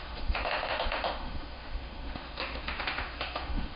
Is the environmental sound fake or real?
fake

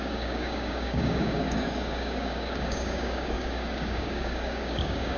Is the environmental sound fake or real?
fake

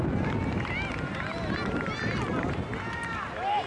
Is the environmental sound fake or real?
real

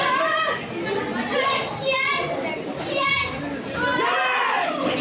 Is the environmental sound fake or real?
real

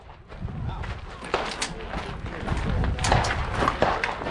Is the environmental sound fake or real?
real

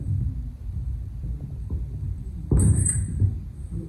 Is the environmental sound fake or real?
real